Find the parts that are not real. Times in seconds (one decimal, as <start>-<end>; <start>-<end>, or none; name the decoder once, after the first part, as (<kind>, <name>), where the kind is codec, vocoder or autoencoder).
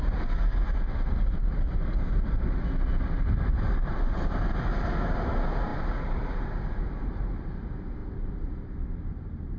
5.7-6.3 (vocoder, BigVGAN v2); 8.0-9.1